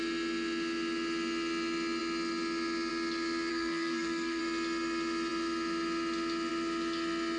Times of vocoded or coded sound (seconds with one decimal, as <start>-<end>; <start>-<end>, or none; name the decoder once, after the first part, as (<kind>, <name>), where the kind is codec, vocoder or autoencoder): 3.5-4.4 (codec, SNAC)